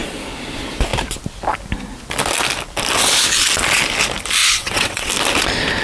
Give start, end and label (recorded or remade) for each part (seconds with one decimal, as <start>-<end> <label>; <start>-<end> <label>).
0.0-4.4 recorded; 4.4-5.1 remade; 5.1-5.8 recorded